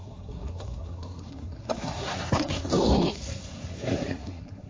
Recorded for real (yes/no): no